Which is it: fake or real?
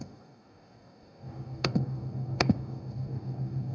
fake